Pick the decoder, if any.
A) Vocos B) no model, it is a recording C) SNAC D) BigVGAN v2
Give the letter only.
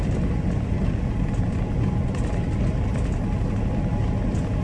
B